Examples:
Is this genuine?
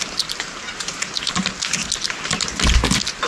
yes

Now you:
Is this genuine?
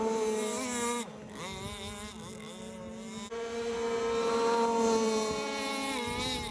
yes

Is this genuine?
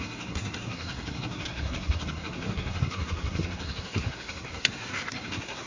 no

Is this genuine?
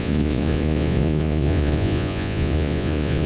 no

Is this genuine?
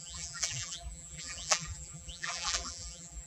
no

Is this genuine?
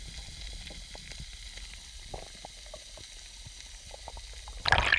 yes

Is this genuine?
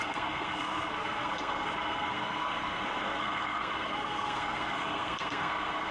no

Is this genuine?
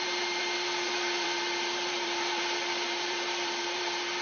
no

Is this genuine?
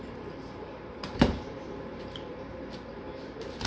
no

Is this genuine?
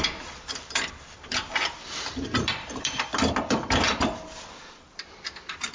no